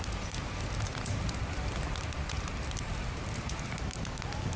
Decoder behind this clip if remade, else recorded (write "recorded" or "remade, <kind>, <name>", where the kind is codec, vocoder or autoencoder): recorded